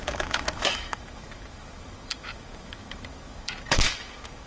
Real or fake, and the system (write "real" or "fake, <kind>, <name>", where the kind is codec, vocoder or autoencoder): fake, autoencoder, DAC-VAE